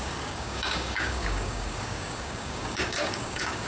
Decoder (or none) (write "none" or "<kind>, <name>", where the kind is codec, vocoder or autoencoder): codec, DAC